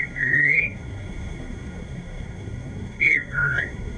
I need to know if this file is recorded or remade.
remade